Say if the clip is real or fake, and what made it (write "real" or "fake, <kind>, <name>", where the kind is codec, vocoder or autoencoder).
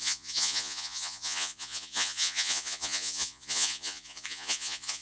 fake, vocoder, Vocos